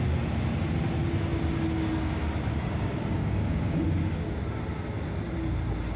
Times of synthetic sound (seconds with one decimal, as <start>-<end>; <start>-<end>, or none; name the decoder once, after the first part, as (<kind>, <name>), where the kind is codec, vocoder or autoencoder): 2.5-3.8 (codec, DAC)